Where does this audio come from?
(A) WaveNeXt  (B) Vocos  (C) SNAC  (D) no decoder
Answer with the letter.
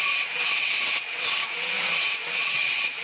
A